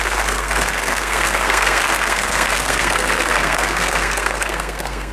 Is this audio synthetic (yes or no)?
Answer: yes